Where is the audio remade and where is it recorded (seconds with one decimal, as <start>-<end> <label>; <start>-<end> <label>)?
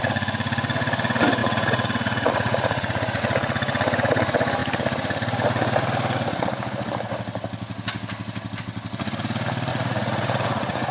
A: 0.0-1.4 recorded; 1.4-3.2 remade; 3.2-9.7 recorded; 9.7-10.9 remade